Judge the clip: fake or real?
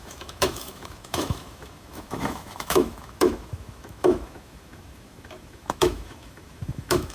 fake